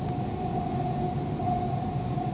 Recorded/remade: recorded